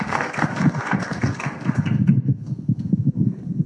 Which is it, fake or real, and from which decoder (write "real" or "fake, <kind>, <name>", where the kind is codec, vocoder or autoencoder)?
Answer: fake, codec, SNAC